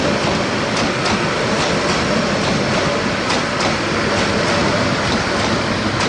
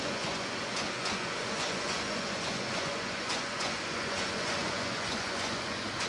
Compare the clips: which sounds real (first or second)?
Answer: first